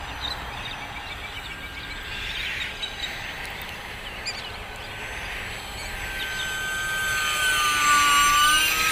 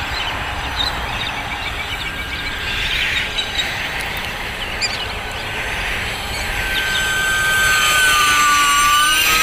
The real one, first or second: first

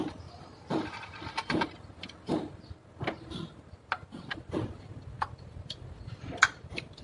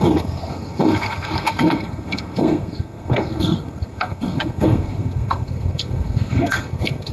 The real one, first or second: first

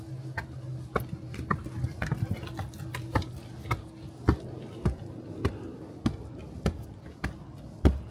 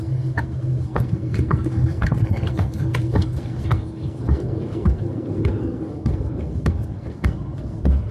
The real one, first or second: first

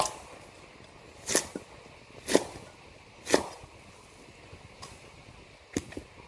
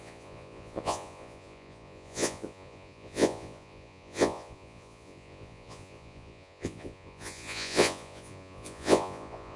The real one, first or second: first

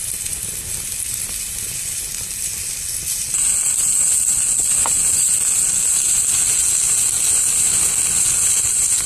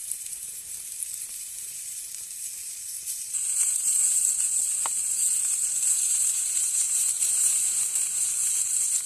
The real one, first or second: first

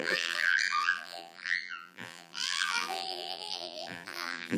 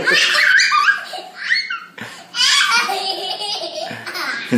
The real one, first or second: second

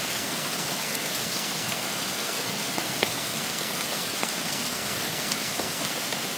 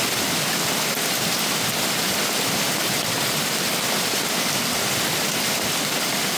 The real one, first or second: second